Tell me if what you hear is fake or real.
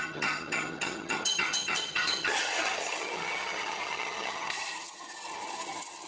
fake